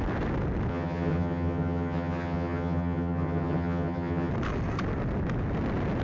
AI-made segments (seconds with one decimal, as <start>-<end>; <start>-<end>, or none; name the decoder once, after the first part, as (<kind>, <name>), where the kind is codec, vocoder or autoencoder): 0.7-4.3 (vocoder, HiFi-GAN)